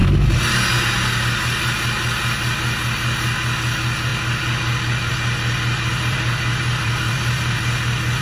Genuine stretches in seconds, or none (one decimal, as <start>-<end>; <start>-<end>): 0.0-5.9; 7.6-8.2